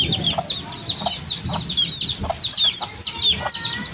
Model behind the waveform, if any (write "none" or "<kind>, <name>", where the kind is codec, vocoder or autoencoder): none